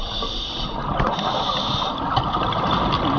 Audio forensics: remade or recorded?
recorded